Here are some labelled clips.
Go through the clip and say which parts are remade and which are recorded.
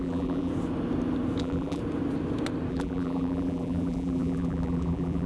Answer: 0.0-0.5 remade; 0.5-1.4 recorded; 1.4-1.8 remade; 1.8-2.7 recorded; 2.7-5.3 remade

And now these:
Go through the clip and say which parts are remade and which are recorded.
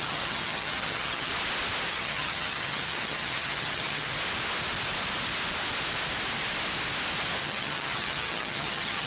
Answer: 0.0-1.3 remade; 1.3-1.9 recorded; 1.9-4.1 remade; 4.1-7.4 recorded; 7.4-9.1 remade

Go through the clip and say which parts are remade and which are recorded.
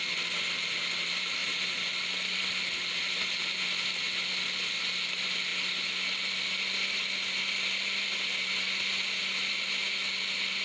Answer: 0.0-10.6 recorded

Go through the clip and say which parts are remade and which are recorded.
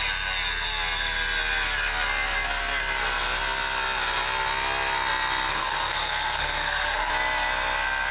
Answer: 0.0-5.5 recorded; 5.5-7.1 remade; 7.1-8.1 recorded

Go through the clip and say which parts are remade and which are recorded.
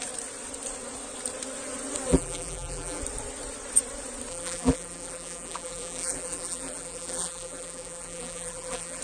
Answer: 0.0-2.1 recorded; 2.1-3.0 remade; 3.0-4.3 recorded; 4.3-9.0 remade